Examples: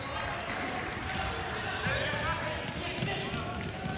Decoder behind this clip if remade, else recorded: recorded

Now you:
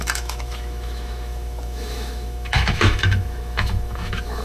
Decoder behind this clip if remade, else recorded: remade, autoencoder, DAC-VAE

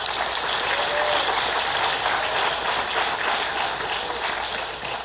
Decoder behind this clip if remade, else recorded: recorded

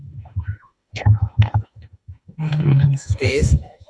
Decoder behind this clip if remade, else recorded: remade, autoencoder, DAC-VAE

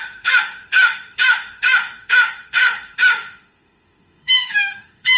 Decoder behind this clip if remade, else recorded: remade, autoencoder, DAC-VAE